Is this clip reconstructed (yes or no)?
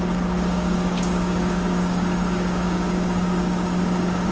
yes